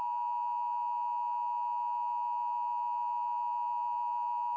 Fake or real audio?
real